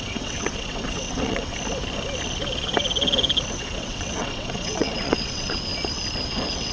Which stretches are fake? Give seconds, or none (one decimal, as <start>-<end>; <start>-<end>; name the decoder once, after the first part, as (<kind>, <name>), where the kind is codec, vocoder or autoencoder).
0.0-1.5 (vocoder, WaveNeXt); 3.5-5.7; 6.3-6.7